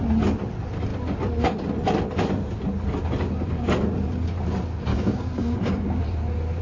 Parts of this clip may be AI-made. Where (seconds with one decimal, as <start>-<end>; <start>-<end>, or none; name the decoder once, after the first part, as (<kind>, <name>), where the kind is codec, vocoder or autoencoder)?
4.9-6.0 (codec, DAC)